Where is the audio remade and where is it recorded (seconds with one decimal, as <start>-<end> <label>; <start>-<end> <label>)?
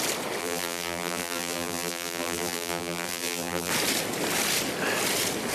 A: 0.0-0.4 recorded; 0.4-3.7 remade; 3.7-5.5 recorded